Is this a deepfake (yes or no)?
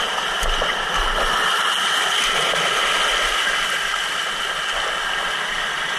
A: no